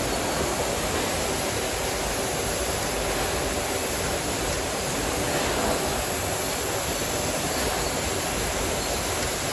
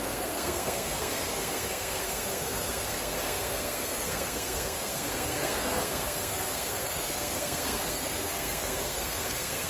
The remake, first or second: second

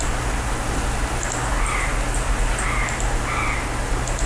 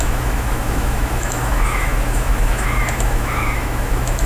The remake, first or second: second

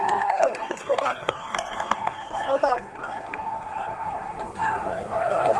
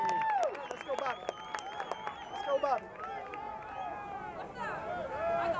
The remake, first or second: first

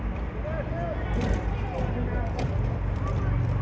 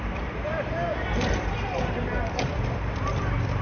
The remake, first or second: second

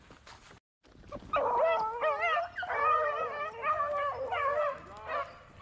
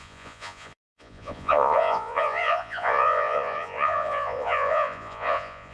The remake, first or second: second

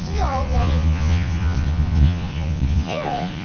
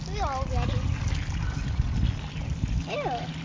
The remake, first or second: first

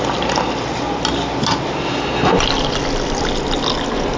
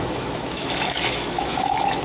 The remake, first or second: second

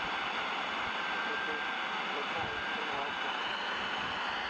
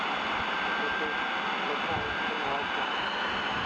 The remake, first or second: first